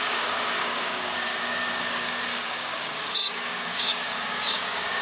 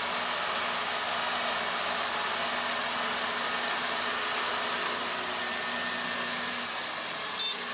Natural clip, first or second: second